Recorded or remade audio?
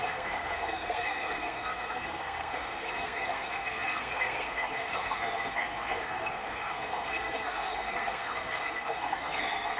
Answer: remade